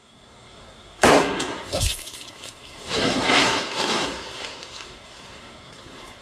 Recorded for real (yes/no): no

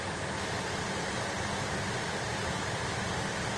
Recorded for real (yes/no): yes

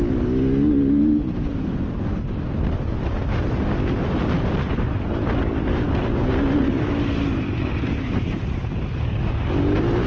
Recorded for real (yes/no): yes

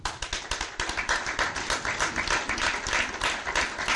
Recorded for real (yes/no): yes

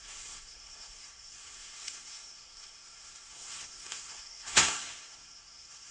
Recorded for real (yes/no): no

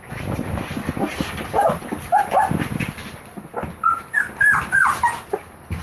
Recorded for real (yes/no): yes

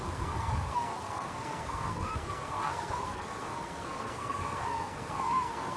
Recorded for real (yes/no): no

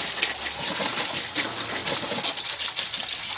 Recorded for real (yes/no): yes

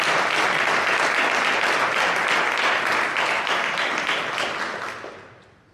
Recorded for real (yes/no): yes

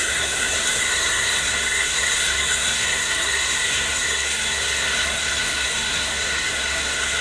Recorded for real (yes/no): no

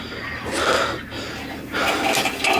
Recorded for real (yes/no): yes